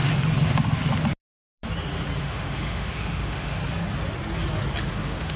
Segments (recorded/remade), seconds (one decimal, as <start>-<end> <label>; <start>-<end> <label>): 0.0-2.2 recorded; 2.2-3.6 remade; 3.6-4.9 recorded; 4.9-5.4 remade